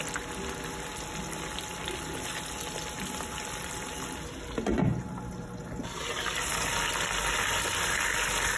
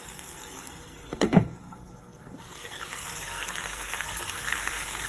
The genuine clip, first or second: first